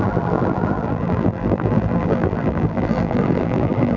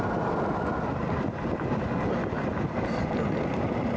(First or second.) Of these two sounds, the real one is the second